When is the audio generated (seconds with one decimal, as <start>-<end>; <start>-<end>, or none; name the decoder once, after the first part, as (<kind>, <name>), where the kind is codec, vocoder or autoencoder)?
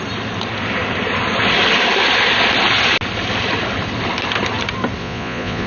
5.0-5.7 (vocoder, Vocos)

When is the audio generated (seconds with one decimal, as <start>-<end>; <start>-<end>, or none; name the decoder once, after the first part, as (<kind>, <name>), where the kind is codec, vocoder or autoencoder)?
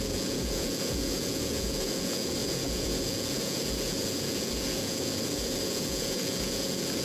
0.0-7.0 (vocoder, Vocos)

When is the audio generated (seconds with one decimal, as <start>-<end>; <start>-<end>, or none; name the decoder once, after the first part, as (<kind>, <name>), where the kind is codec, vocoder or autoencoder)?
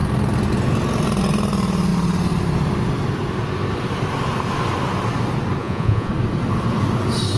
5.6-6.1 (vocoder, Vocos)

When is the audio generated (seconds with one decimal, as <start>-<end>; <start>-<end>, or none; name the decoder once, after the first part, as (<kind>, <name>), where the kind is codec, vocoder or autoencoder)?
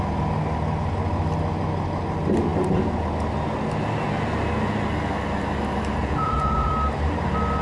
6.0-6.7 (vocoder, Vocos)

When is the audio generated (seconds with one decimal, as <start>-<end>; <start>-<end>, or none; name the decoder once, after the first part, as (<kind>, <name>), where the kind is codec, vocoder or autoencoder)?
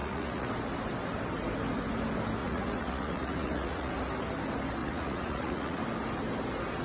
0.0-0.5 (vocoder, Vocos); 2.4-3.9; 4.8-5.8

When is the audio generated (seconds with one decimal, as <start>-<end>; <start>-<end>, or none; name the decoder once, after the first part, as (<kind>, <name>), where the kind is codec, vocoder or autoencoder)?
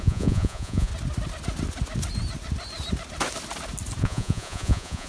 0.0-0.9 (vocoder, Vocos); 4.0-5.1